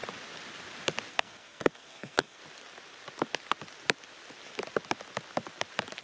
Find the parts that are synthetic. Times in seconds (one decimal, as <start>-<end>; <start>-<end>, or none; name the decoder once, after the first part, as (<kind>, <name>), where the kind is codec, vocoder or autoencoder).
1.1-2.4 (codec, SNAC)